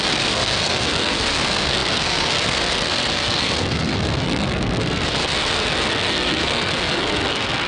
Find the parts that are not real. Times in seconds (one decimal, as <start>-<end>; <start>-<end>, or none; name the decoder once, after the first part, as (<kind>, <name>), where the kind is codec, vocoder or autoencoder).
0.0-7.7 (codec, SNAC)